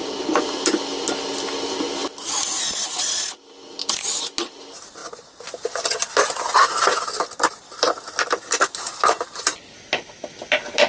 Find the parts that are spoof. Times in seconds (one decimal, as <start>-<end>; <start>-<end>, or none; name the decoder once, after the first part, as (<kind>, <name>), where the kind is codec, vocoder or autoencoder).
none